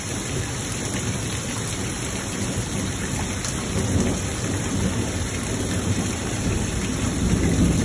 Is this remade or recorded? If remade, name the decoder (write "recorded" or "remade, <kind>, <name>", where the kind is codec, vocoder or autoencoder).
recorded